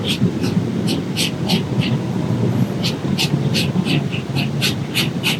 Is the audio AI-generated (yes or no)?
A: no